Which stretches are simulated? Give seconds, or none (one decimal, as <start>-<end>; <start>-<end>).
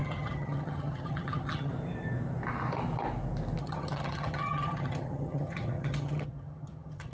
0.0-1.7; 3.6-7.1